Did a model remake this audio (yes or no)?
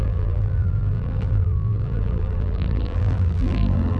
yes